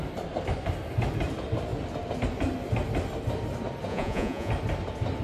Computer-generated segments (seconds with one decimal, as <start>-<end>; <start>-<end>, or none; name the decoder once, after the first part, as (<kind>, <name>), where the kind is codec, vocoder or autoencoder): 3.9-4.5 (vocoder, Vocos)